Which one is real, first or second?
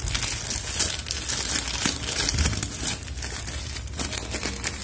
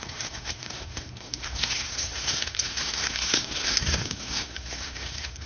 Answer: first